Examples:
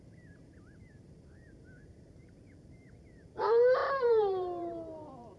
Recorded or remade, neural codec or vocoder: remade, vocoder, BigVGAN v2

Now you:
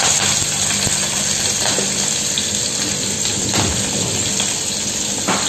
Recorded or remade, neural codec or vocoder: recorded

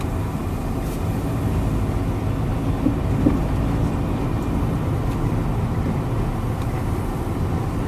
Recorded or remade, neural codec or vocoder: recorded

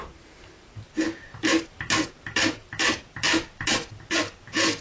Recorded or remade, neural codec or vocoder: recorded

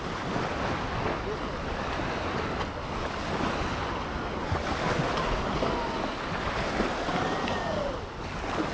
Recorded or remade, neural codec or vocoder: recorded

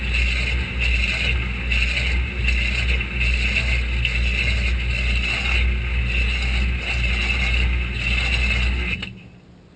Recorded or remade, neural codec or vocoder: recorded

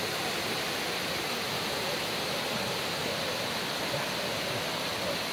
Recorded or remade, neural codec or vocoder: recorded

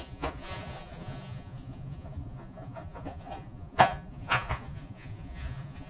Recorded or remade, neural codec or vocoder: remade, vocoder, Vocos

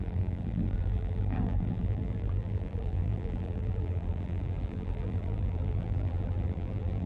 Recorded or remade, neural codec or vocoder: remade, vocoder, BigVGAN v2